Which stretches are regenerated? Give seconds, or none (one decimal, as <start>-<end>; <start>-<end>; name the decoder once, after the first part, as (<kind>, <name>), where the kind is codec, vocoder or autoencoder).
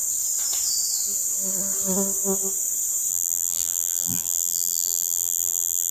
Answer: 3.1-5.9 (vocoder, BigVGAN v2)